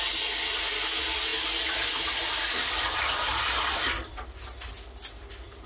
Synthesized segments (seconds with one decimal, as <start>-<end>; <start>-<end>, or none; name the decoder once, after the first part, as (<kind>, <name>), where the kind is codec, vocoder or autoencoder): none